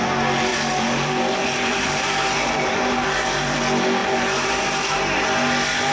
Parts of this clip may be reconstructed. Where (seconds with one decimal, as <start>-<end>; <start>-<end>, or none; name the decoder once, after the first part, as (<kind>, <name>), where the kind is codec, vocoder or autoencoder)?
0.5-3.6 (vocoder, BigVGAN v2); 4.0-5.0